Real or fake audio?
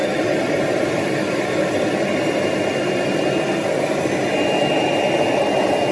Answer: real